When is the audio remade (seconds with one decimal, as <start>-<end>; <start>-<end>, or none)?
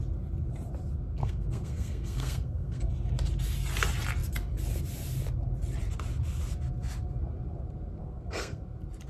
1.2-2.9; 8.0-8.6